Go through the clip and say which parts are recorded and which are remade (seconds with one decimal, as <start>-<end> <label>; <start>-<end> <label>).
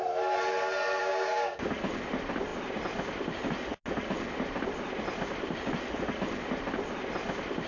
0.0-1.0 recorded; 1.0-1.7 remade; 1.7-7.7 recorded